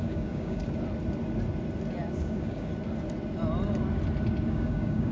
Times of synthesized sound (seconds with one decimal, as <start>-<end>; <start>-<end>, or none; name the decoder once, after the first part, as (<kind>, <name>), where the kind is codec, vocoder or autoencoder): 0.0-0.6 (codec, DAC); 2.2-2.7; 4.5-5.1